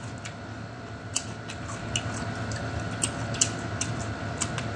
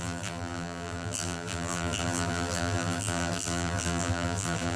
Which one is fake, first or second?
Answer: second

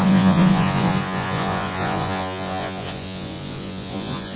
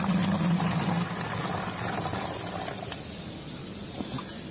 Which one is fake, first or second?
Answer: first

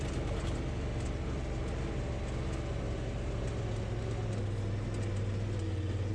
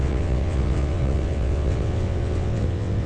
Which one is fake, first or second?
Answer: second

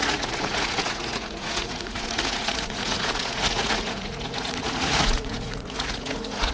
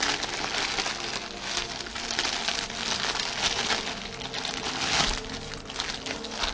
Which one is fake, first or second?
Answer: first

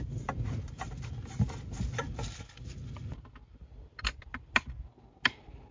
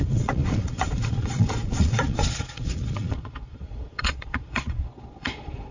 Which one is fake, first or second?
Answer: second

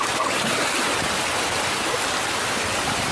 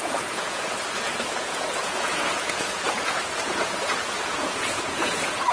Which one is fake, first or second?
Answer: second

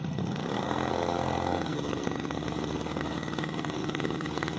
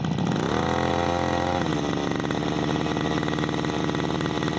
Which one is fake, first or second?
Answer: first